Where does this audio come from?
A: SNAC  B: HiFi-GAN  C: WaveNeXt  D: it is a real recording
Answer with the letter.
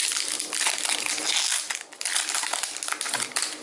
D